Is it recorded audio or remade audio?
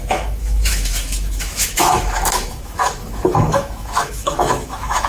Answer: remade